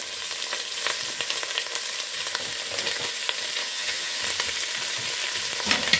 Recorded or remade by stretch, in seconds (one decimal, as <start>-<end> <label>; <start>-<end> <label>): 0.0-3.6 recorded; 3.6-4.2 remade; 4.2-6.0 recorded